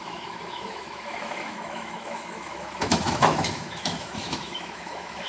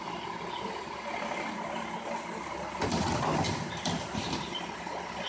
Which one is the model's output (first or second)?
first